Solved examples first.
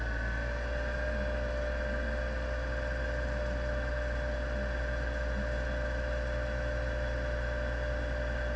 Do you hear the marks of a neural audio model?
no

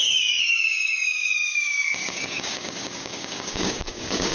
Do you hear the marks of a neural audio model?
yes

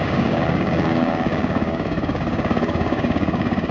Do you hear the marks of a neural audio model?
yes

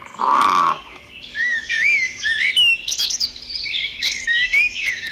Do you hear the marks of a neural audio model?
yes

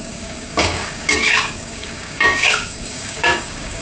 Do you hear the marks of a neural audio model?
yes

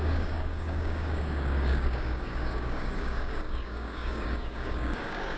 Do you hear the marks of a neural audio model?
yes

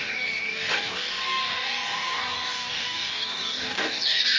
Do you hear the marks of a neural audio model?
yes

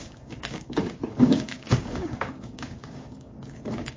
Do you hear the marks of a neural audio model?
yes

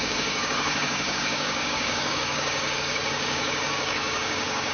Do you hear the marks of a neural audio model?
yes